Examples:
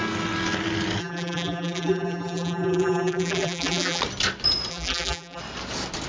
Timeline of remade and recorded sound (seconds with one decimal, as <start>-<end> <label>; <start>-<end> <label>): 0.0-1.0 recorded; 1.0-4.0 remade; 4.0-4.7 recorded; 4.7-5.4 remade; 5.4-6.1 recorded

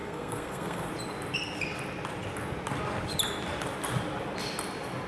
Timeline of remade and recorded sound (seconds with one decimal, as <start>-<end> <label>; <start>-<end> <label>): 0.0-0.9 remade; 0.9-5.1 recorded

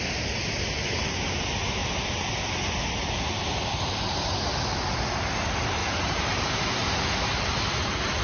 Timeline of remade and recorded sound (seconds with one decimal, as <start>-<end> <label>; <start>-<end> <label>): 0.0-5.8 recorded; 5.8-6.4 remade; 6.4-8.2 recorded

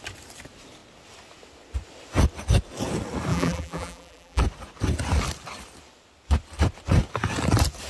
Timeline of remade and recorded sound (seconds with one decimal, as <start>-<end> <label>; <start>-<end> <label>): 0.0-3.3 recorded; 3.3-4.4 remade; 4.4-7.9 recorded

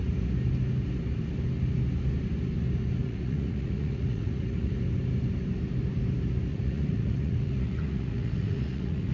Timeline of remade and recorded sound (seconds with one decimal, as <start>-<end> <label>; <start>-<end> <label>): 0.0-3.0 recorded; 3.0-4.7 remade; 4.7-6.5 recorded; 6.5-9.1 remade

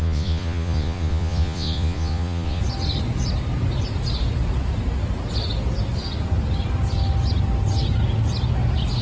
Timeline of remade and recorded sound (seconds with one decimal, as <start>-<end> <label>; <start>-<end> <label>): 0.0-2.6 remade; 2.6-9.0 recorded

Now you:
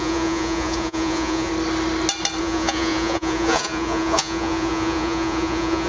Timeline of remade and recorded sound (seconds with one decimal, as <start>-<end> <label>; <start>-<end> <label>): 0.0-1.5 remade; 1.5-2.4 recorded; 2.4-5.9 remade

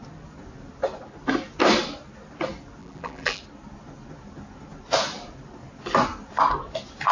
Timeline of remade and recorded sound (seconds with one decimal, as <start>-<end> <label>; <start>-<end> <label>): 0.0-2.8 recorded; 2.8-3.4 remade; 3.4-7.1 recorded